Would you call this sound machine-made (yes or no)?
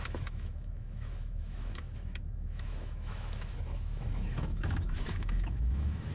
yes